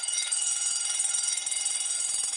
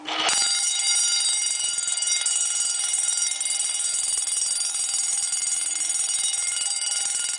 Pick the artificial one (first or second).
first